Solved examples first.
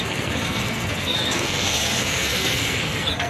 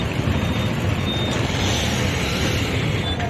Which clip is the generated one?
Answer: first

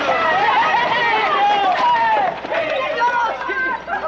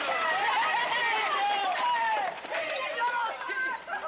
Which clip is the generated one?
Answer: second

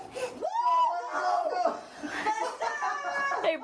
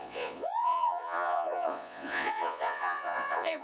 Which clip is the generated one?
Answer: second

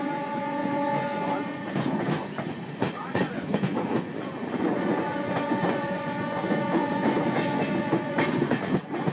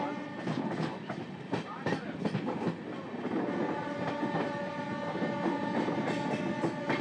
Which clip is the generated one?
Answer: first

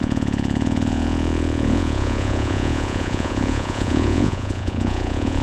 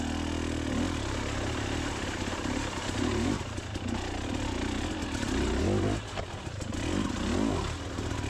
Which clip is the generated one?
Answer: first